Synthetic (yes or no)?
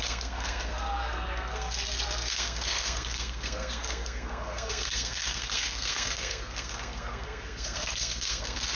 yes